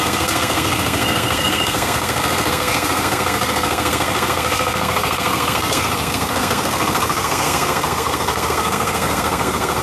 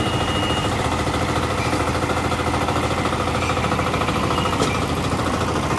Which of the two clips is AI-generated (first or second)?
first